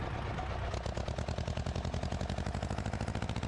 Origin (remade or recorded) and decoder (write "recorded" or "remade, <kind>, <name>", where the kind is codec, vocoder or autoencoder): recorded